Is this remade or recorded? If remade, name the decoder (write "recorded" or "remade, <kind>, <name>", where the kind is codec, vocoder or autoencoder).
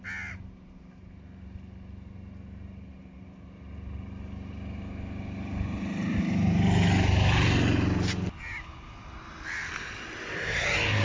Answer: recorded